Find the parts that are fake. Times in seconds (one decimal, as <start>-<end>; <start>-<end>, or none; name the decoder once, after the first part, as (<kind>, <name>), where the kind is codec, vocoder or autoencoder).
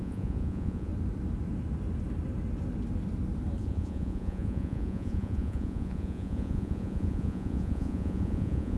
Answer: 0.0-0.9 (vocoder, Vocos); 3.6-8.8